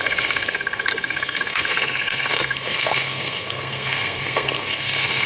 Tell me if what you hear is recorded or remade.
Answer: remade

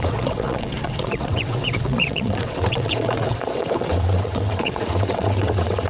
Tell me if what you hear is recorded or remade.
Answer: remade